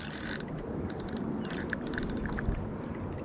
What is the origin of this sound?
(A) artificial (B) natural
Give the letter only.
B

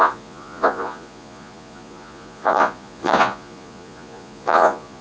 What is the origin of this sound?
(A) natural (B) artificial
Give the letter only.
B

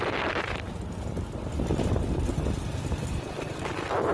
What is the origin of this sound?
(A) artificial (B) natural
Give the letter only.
B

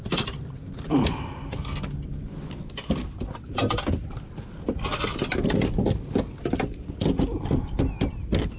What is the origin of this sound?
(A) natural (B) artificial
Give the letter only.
A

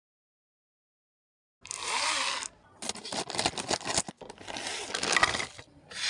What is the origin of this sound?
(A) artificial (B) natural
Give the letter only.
B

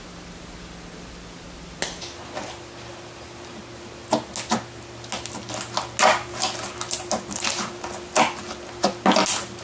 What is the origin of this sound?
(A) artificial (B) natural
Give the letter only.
B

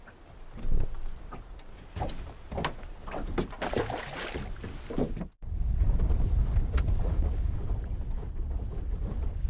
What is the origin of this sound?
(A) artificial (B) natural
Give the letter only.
B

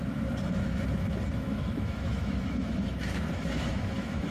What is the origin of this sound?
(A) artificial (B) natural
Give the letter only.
A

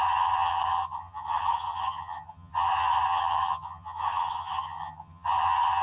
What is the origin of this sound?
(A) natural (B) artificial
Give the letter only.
B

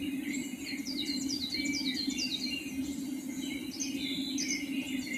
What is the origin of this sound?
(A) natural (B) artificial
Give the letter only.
A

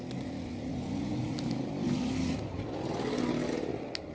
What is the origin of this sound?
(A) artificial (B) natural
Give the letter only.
B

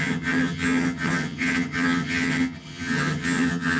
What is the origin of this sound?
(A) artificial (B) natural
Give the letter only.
A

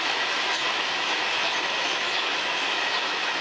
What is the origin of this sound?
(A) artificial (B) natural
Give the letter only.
A